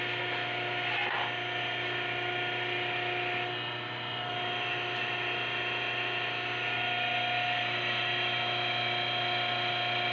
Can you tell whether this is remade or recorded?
recorded